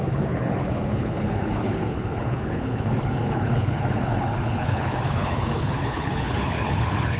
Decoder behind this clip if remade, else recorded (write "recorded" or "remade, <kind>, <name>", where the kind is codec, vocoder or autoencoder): remade, codec, HILCodec